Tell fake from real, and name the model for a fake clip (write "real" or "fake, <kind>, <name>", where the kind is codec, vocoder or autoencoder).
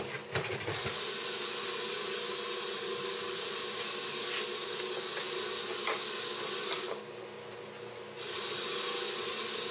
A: real